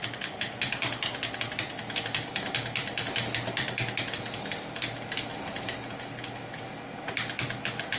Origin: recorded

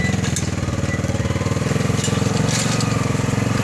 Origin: recorded